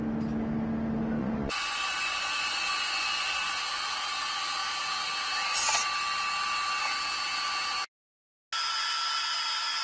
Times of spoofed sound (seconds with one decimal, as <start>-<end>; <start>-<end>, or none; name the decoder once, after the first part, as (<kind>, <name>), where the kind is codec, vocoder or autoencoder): 1.2-3.6 (vocoder, Vocos)